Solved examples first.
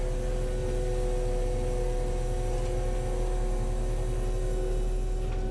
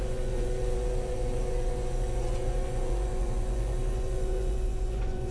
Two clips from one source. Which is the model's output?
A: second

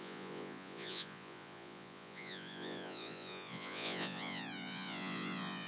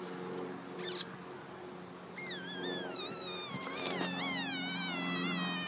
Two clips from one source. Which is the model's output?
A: first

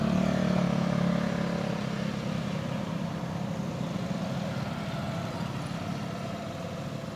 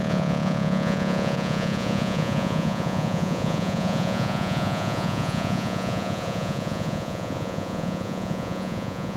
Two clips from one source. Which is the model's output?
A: second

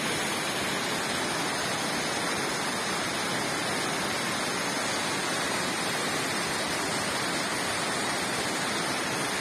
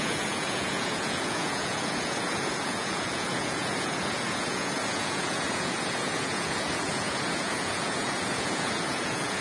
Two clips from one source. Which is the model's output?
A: second